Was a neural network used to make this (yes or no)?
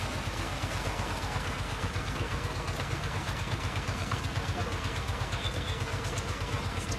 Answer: yes